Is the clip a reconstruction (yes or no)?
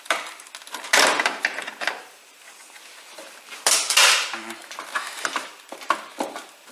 no